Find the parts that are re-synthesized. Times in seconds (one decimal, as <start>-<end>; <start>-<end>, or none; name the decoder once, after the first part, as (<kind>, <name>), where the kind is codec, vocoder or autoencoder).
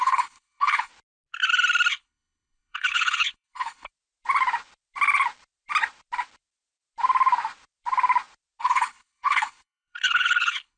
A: 0.0-0.9 (codec, HILCodec); 1.9-3.9; 8.6-10.8